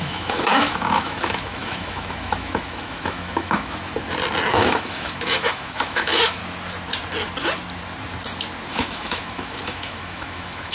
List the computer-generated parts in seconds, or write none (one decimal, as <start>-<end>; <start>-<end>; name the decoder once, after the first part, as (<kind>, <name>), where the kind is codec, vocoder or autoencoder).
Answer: 0.0-3.9 (autoencoder, DAC-VAE); 4.5-6.4; 8.7-10.7